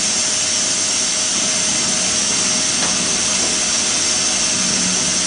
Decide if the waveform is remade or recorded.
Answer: recorded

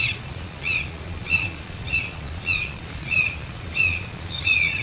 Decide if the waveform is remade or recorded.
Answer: remade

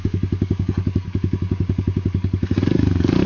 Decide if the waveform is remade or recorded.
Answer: remade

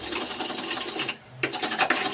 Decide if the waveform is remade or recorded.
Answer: recorded